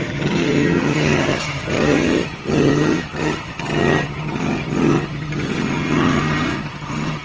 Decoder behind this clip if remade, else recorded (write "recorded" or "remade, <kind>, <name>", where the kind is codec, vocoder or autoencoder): remade, vocoder, HiFi-GAN